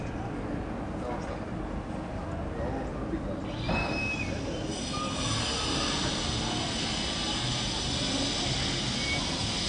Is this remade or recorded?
recorded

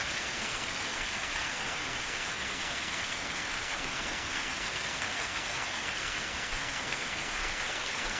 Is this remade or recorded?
remade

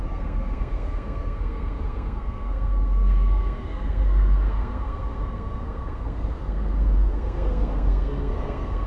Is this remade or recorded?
remade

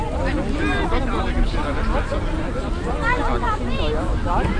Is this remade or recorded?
recorded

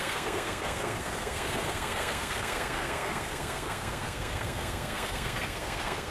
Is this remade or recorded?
remade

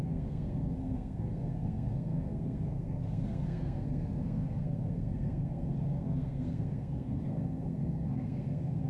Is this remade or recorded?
remade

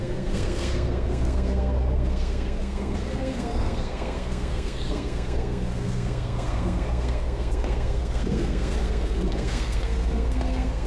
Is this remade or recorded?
remade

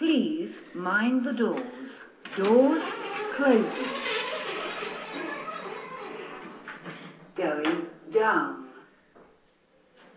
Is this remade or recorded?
recorded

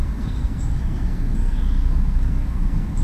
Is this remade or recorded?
remade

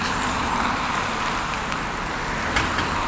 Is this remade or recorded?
recorded